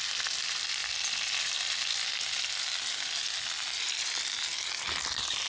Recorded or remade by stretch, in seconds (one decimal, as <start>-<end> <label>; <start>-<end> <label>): 0.0-5.5 recorded